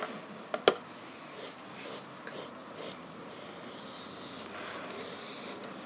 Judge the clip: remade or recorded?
recorded